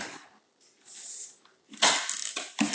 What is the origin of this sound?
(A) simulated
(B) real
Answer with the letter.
B